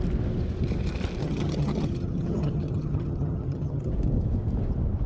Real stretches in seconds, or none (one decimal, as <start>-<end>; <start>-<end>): 0.0-1.2; 3.9-5.1